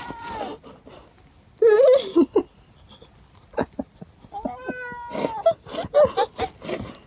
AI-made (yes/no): no